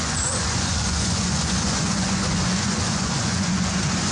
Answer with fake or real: fake